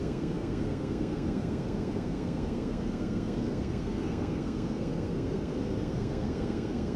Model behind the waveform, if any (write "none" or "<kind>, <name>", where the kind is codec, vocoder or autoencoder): codec, SNAC